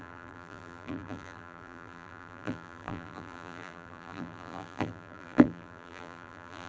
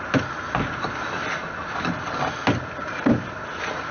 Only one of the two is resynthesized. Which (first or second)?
first